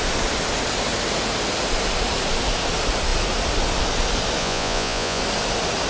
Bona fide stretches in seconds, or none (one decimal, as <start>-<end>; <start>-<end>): 0.0-4.4; 5.2-5.9